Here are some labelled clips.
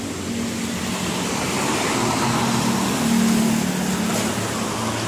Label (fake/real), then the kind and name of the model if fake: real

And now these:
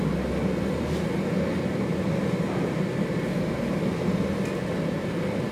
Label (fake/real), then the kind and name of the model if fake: real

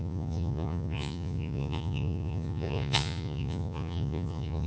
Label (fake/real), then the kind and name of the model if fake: fake, vocoder, Vocos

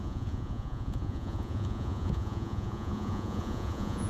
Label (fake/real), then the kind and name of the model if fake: fake, vocoder, Vocos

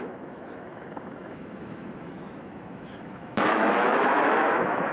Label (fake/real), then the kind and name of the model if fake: fake, autoencoder, DAC-VAE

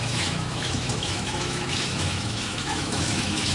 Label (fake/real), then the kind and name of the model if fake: fake, autoencoder, DAC-VAE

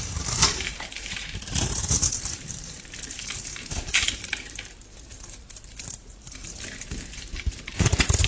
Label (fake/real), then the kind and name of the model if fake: fake, vocoder, BigVGAN v2